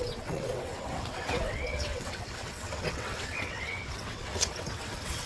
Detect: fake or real fake